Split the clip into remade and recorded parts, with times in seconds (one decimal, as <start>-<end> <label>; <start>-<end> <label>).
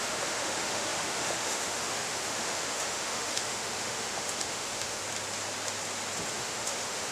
0.0-5.0 remade; 5.0-6.3 recorded; 6.3-7.1 remade